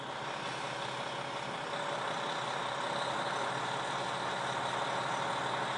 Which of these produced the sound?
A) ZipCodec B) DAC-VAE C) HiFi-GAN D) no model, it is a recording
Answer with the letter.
D